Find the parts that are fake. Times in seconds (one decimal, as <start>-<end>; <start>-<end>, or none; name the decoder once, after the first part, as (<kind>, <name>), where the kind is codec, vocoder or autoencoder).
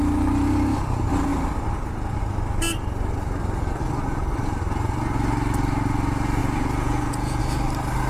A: 6.4-7.4 (vocoder, Vocos)